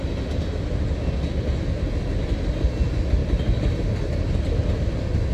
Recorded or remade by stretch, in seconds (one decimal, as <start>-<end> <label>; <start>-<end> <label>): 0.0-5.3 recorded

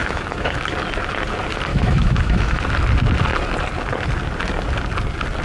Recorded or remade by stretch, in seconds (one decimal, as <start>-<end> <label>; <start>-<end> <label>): 0.0-0.6 remade; 0.6-1.7 recorded; 1.7-2.6 remade; 2.6-5.4 recorded

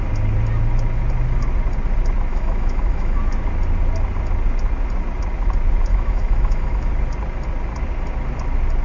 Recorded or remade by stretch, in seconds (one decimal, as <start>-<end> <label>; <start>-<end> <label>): 0.0-2.3 recorded; 2.3-3.2 remade; 3.2-5.9 recorded; 5.9-6.9 remade; 6.9-8.8 recorded

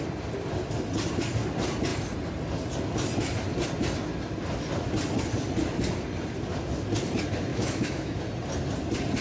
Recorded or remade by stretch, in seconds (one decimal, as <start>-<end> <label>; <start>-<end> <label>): 0.0-7.5 recorded; 7.5-8.2 remade; 8.2-9.2 recorded

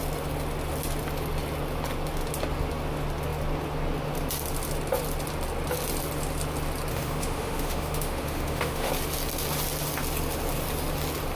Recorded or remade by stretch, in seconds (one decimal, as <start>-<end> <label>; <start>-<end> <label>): 0.0-6.9 recorded; 6.9-8.9 remade; 8.9-11.4 recorded

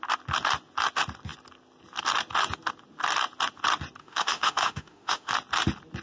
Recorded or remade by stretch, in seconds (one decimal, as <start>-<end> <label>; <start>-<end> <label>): 0.0-4.0 recorded; 4.0-5.3 remade; 5.3-6.0 recorded

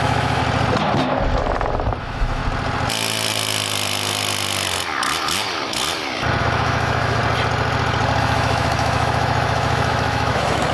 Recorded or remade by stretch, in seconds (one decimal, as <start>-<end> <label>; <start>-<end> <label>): 0.0-0.4 remade; 0.4-2.0 recorded; 2.0-2.4 remade; 2.4-6.4 recorded; 6.4-7.2 remade; 7.2-8.2 recorded; 8.2-10.7 remade

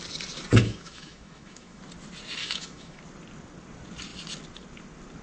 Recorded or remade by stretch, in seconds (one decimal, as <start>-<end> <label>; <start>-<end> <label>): 0.0-0.6 recorded; 0.6-1.8 remade; 1.8-2.4 recorded; 2.4-3.0 remade; 3.0-5.2 recorded